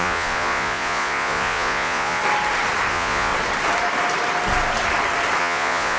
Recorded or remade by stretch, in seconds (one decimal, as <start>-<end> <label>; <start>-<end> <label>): 0.0-2.2 remade; 2.2-2.9 recorded; 2.9-3.3 remade; 3.3-5.4 recorded; 5.4-6.0 remade